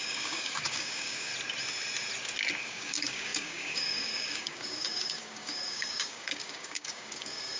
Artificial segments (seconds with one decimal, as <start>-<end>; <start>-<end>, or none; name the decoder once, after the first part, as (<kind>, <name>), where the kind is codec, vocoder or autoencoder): 0.0-1.3 (codec, DAC); 2.6-7.6